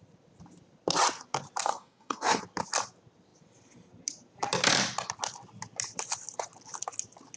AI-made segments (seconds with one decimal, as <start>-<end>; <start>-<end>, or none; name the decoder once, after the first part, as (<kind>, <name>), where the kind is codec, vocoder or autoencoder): 1.7-2.4 (codec, DAC)

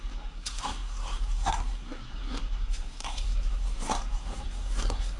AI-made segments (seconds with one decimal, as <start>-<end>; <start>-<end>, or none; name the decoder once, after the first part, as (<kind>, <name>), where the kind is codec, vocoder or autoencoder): 0.0-5.2 (codec, SNAC)

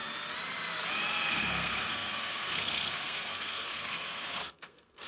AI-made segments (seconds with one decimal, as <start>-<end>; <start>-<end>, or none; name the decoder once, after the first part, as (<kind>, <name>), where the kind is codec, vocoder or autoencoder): 1.3-5.1 (codec, SNAC)

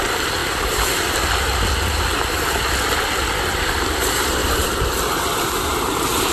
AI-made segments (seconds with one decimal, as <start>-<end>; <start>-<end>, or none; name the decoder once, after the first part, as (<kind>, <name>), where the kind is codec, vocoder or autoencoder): 0.0-0.4 (vocoder, BigVGAN v2); 3.8-6.3

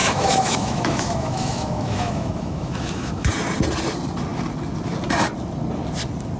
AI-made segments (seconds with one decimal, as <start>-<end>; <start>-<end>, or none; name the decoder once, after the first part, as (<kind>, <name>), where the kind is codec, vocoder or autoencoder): 0.0-3.3 (autoencoder, DAC-VAE)

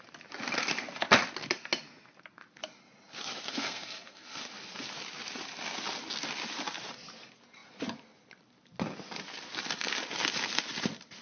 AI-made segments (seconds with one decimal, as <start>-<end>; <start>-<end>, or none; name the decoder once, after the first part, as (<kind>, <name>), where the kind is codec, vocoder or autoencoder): 3.5-4.4 (codec, SNAC)

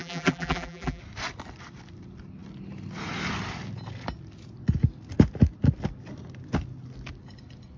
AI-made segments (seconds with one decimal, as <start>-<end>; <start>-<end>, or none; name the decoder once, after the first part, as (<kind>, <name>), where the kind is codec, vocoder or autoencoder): 0.0-1.0 (vocoder, BigVGAN v2)